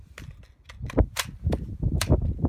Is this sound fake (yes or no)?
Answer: yes